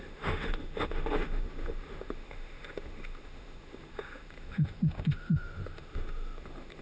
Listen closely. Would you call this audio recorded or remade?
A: remade